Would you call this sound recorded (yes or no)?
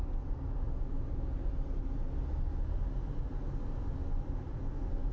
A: yes